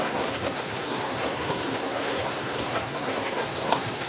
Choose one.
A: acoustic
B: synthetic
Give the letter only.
B